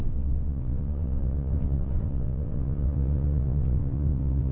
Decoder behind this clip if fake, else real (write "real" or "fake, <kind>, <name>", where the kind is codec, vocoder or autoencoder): fake, vocoder, WaveNeXt